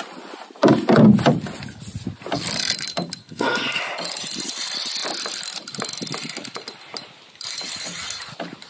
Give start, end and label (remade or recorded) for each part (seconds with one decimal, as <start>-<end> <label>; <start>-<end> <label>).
0.0-3.2 recorded; 3.2-3.8 remade; 3.8-8.7 recorded